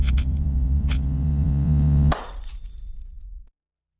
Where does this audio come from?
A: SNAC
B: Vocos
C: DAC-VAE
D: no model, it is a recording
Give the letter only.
B